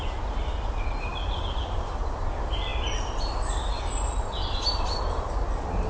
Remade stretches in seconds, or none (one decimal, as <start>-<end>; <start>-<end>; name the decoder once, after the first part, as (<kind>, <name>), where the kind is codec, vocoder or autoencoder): none